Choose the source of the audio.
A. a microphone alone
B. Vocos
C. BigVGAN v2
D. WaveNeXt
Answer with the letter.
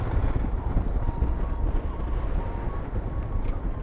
A